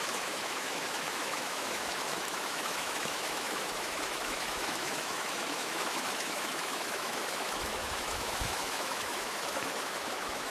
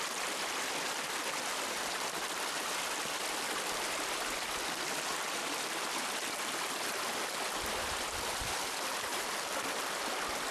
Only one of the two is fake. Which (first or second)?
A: first